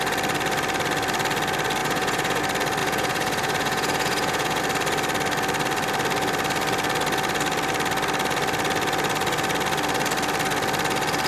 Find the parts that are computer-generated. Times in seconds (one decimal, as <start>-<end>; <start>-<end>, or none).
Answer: 1.8-2.4; 2.8-4.6